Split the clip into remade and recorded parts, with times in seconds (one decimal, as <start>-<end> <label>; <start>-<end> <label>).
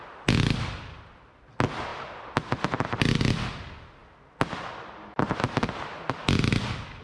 0.0-7.0 recorded